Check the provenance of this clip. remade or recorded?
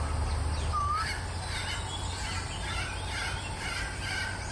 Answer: recorded